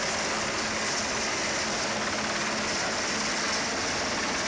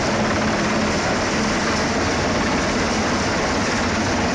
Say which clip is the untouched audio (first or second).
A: first